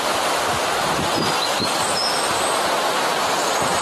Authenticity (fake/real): fake